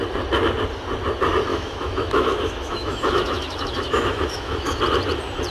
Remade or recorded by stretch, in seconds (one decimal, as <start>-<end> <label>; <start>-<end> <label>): 0.0-1.5 recorded; 1.5-4.8 remade; 4.8-5.5 recorded